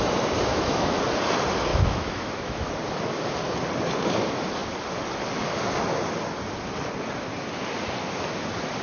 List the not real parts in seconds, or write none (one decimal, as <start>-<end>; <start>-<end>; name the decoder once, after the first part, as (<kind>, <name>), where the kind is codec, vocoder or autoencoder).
0.5-1.0 (autoencoder, DAC-VAE); 1.7-2.7